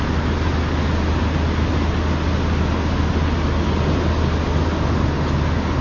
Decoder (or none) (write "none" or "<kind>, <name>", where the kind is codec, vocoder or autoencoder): none